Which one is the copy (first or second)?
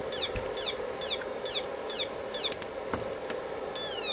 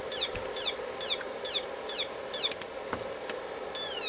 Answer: second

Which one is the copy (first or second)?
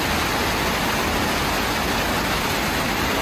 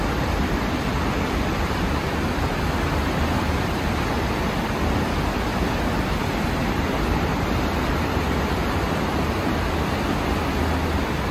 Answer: second